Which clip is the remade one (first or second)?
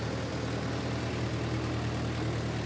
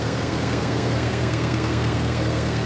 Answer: second